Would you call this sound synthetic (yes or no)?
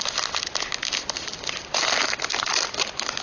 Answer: no